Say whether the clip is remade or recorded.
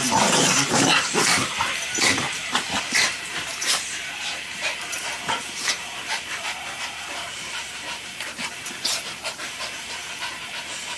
remade